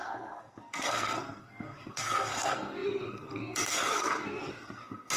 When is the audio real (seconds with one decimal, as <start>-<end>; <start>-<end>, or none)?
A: none